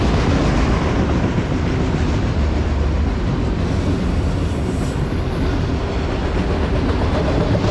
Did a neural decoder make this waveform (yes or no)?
no